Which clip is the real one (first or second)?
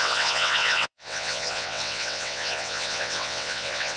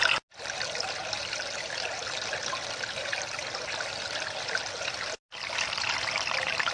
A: second